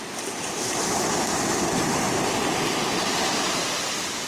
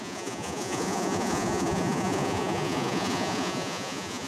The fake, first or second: second